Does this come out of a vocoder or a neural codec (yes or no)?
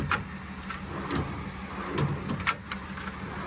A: no